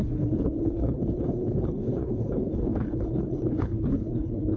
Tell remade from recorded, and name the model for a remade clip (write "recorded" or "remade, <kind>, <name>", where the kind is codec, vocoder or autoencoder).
remade, codec, HILCodec